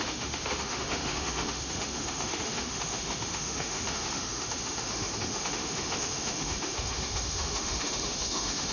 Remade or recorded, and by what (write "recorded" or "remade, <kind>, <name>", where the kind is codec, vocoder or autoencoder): remade, autoencoder, DAC-VAE